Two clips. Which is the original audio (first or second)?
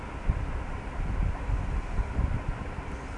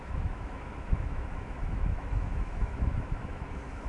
first